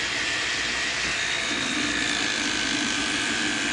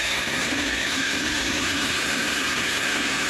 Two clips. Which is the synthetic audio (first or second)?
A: second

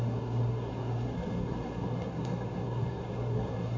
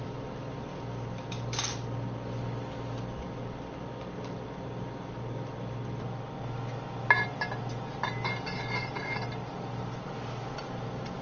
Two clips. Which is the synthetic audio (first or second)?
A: first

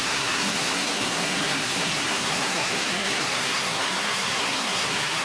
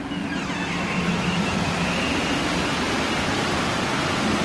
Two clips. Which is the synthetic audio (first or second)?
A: first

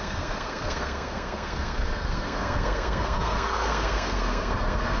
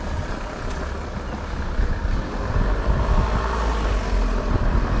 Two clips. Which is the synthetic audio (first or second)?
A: first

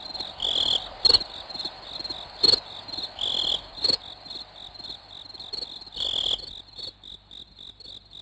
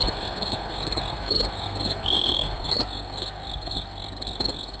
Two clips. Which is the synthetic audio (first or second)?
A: second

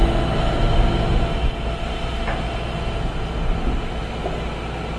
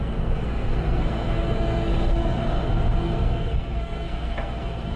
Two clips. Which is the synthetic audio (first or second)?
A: second